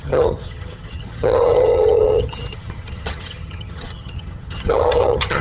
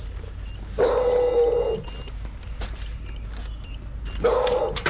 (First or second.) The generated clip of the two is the first